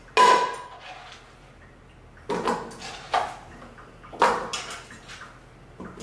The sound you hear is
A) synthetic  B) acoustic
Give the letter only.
B